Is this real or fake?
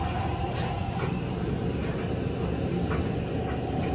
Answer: real